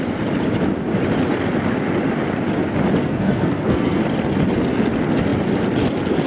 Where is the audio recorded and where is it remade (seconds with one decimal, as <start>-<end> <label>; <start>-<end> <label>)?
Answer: 0.0-3.0 recorded; 3.0-4.0 remade; 4.0-6.3 recorded